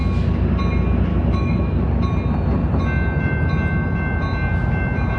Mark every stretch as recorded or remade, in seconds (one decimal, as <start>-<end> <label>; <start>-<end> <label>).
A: 0.0-1.1 recorded; 1.1-1.8 remade; 1.8-5.2 recorded